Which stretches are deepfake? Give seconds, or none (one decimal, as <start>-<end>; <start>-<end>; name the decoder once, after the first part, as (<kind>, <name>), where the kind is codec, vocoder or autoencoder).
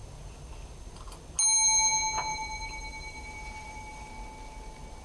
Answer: 2.3-4.1 (vocoder, BigVGAN v2)